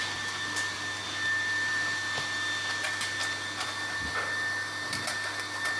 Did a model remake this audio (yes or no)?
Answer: no